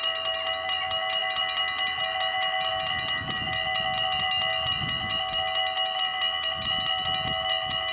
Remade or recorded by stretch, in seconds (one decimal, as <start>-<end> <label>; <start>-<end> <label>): 0.0-7.9 recorded